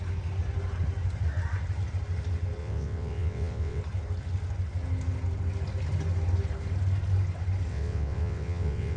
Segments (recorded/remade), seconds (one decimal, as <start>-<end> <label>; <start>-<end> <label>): 0.0-2.6 recorded; 2.6-3.8 remade; 3.8-7.7 recorded; 7.7-9.0 remade